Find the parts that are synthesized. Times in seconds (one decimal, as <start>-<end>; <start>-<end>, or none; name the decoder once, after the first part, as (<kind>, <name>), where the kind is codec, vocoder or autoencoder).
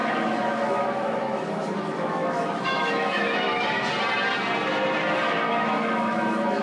0.0-3.9 (autoencoder, DAC-VAE); 5.5-6.6